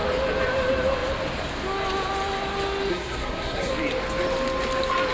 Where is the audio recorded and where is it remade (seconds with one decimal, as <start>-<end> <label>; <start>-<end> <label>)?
0.0-2.9 recorded; 2.9-3.7 remade; 3.7-5.1 recorded